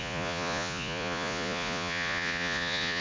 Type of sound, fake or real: fake